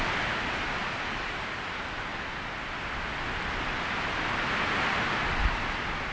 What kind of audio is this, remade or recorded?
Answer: recorded